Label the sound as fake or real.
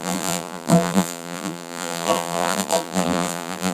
fake